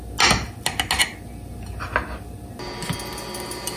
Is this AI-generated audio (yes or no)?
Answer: no